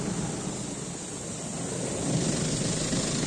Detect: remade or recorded recorded